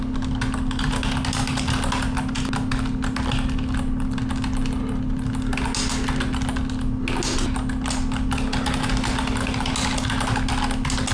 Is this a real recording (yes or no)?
yes